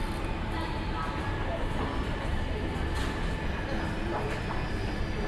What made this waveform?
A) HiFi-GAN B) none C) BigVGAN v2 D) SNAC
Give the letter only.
B